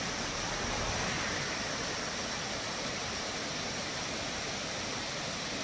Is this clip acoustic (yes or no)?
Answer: yes